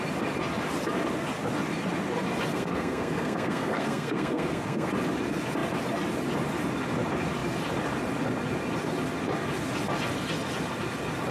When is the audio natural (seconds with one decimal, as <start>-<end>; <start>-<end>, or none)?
0.0-2.5; 4.9-11.3